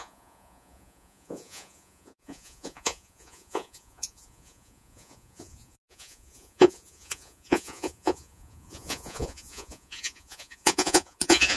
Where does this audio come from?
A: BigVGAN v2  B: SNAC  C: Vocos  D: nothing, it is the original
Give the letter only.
C